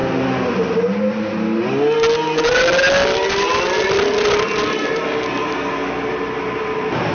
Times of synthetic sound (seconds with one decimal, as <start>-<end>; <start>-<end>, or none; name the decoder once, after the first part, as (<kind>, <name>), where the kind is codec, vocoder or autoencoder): none

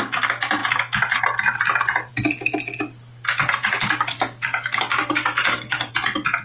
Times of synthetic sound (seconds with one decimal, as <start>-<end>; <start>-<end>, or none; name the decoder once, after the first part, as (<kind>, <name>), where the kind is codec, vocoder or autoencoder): 3.6-5.9 (codec, DAC)

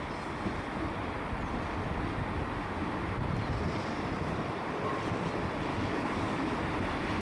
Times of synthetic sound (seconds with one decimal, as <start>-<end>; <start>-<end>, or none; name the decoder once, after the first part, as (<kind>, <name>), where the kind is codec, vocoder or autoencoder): 5.7-6.5 (codec, DAC)

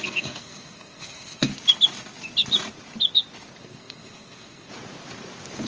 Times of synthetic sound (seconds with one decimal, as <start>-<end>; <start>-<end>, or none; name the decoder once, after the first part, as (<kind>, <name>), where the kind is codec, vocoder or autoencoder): 0.0-1.5 (codec, SNAC); 3.6-4.7